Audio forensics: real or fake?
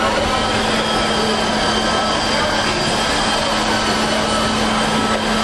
real